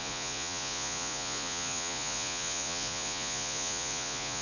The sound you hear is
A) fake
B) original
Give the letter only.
A